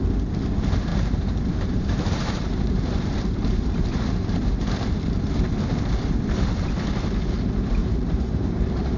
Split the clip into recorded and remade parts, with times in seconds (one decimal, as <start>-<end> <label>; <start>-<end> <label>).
0.0-0.9 recorded; 0.9-4.7 remade; 4.7-7.8 recorded; 7.8-9.0 remade